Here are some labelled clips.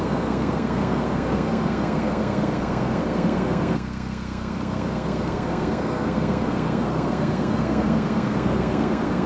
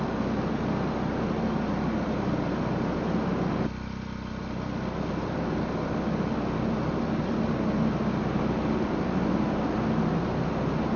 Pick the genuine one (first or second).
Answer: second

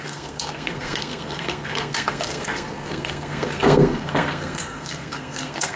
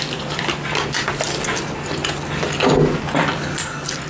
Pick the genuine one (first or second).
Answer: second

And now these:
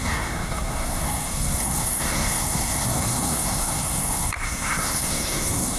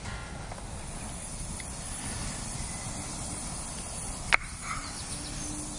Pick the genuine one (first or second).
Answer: second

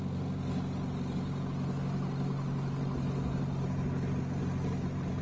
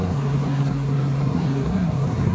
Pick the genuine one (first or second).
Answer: first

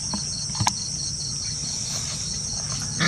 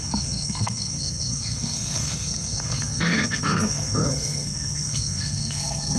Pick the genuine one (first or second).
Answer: first